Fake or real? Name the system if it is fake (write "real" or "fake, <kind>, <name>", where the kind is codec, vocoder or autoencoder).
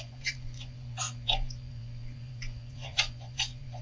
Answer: fake, vocoder, Vocos